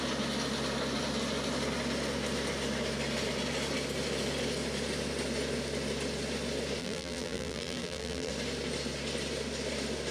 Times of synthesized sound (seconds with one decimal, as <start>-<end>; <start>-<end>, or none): 6.8-8.3